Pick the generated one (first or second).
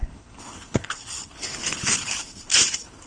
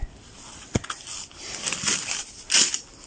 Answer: first